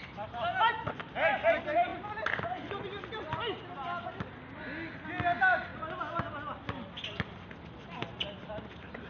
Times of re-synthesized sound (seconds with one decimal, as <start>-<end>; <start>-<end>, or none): none